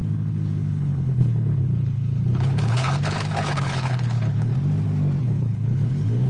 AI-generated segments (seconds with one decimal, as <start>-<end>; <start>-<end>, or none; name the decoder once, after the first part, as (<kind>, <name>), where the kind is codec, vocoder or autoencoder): 0.0-4.5 (codec, HILCodec); 5.2-6.3